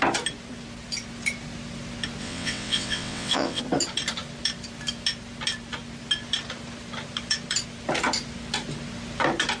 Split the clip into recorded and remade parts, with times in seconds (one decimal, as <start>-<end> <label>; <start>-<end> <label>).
0.0-2.2 recorded; 2.2-3.6 remade; 3.6-9.6 recorded